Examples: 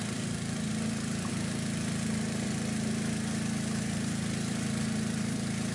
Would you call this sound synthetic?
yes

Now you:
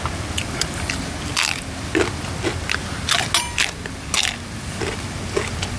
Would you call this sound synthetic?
no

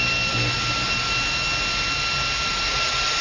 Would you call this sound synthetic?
no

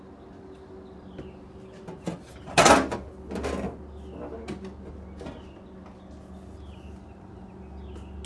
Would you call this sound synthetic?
no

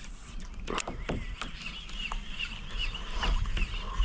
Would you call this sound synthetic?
no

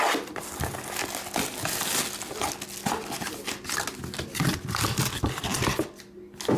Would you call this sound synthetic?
no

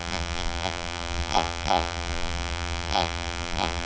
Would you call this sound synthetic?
yes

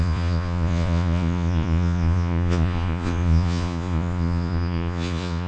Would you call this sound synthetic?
yes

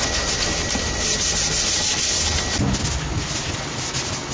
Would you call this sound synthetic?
no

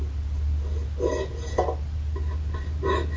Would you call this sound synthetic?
no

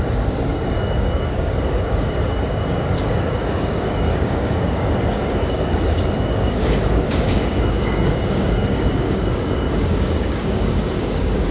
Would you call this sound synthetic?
yes